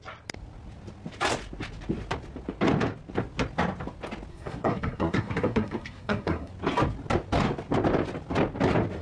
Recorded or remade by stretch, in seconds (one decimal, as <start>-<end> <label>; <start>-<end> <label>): 0.0-4.3 recorded; 4.3-6.5 remade; 6.5-9.0 recorded